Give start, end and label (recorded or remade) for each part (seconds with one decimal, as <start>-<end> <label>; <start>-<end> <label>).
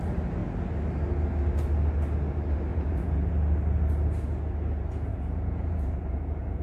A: 0.0-2.7 recorded; 2.7-3.3 remade; 3.3-5.1 recorded; 5.1-6.6 remade